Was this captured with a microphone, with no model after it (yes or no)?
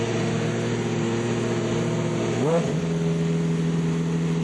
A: yes